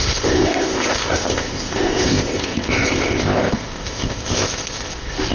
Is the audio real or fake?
fake